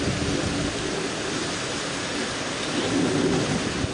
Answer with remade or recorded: recorded